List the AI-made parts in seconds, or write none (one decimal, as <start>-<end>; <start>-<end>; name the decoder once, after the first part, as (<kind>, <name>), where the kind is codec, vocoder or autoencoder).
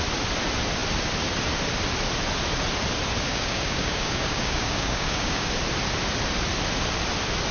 3.3-5.5 (codec, DAC)